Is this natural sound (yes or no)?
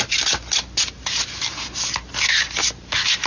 yes